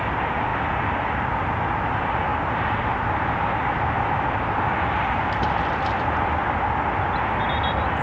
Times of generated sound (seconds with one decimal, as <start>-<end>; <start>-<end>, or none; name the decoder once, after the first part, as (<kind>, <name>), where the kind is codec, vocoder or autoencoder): none

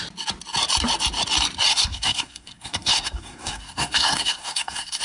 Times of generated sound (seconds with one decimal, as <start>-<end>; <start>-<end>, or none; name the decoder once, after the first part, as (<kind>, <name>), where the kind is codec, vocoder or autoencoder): 1.7-5.0 (codec, SNAC)

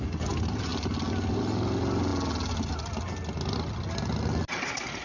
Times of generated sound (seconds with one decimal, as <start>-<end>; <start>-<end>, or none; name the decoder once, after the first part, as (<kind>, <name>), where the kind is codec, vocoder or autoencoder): none

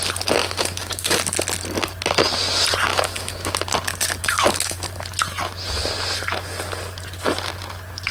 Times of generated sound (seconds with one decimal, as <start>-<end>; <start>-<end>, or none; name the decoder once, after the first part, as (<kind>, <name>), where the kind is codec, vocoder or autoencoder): 0.4-1.2 (autoencoder, DAC-VAE); 2.9-3.5; 4.2-4.9